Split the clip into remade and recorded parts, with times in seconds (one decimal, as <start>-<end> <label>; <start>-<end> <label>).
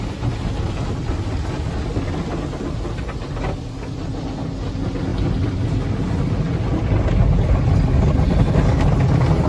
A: 0.0-9.5 recorded